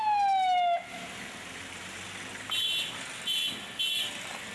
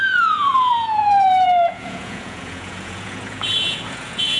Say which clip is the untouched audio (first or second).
first